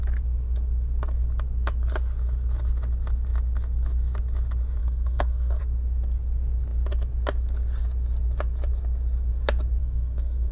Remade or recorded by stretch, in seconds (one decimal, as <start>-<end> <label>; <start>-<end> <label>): 0.0-4.8 recorded; 4.8-5.6 remade; 5.6-9.8 recorded; 9.8-10.5 remade